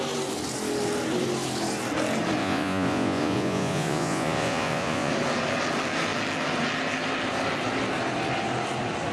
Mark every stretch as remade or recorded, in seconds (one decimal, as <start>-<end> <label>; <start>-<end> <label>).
0.0-2.4 recorded; 2.4-5.1 remade; 5.1-9.1 recorded